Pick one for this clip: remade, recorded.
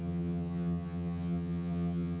remade